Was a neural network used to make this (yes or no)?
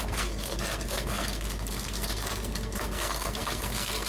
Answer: yes